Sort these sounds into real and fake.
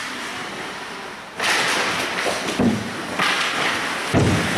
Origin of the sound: real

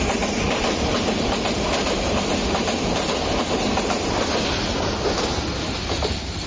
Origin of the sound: real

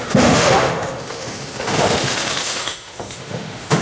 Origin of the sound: fake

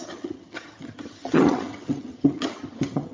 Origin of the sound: fake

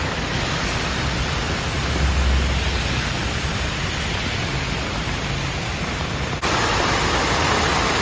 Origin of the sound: real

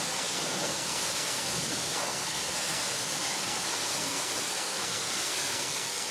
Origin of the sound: fake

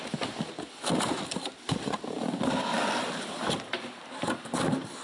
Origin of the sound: real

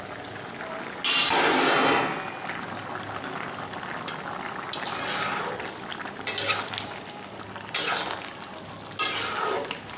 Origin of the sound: real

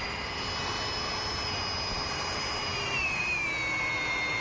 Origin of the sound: real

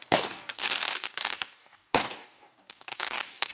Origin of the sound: fake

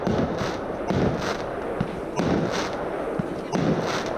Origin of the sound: real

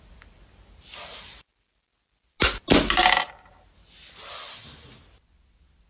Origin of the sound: real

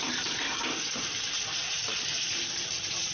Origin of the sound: fake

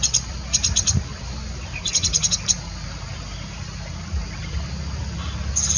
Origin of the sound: real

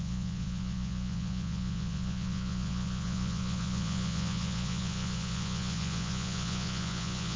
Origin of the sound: fake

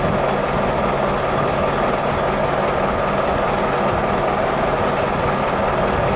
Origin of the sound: real